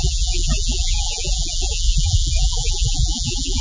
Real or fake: fake